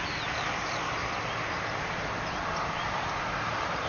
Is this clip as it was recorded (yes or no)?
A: yes